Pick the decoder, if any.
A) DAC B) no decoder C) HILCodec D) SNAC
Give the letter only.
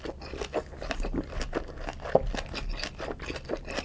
B